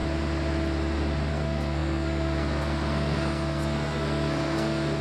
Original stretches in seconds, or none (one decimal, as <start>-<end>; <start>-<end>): 0.0-1.3